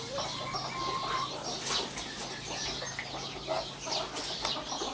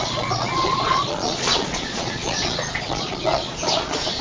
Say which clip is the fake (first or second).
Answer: second